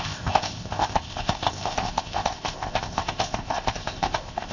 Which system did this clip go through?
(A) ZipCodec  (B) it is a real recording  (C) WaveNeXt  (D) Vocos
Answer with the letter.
A